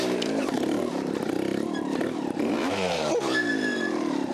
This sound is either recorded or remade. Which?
remade